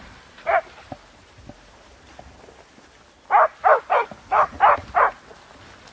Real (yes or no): yes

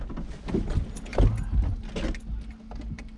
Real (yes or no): yes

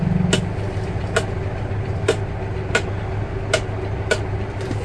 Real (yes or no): yes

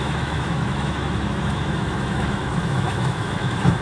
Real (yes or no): no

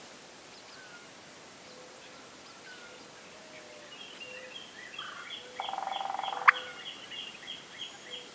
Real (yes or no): yes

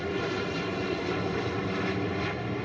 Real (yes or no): yes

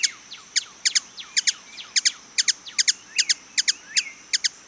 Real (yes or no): yes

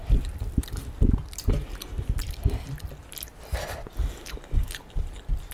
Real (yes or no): yes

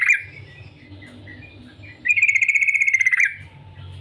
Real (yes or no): yes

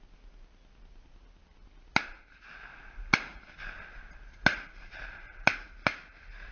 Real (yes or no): yes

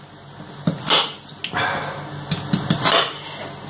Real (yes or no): yes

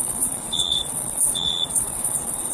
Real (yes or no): no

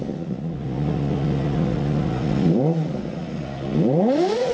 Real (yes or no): no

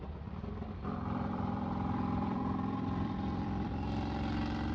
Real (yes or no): no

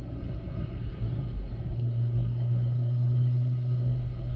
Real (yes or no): no